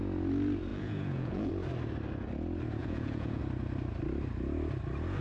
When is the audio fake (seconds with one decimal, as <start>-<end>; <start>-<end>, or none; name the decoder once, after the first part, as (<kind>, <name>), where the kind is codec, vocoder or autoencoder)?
0.7-1.5 (vocoder, Vocos); 2.8-3.4